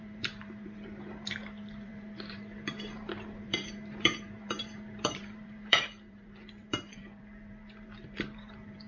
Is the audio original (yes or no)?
no